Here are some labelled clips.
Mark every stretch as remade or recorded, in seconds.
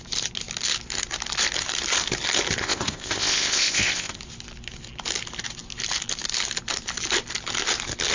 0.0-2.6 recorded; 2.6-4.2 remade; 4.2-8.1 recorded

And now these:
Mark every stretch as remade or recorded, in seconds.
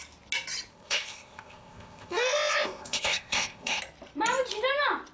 0.0-0.7 recorded; 0.7-3.8 remade; 3.8-5.1 recorded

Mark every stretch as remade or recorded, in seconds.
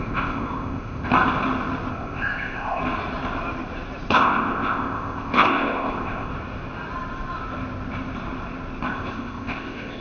0.0-1.1 remade; 1.1-1.9 recorded; 1.9-2.8 remade; 2.8-4.1 recorded; 4.1-6.3 remade; 6.3-8.9 recorded; 8.9-10.0 remade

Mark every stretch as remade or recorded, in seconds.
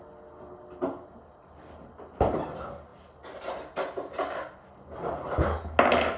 0.0-6.2 recorded